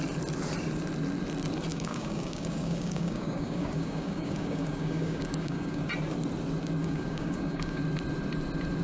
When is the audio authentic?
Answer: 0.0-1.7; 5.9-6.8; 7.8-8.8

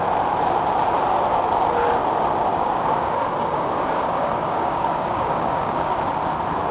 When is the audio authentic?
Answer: 0.0-2.5; 5.9-6.7

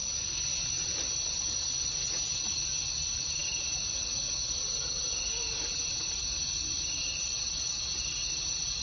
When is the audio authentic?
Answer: 0.0-8.8